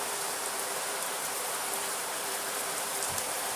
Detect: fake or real fake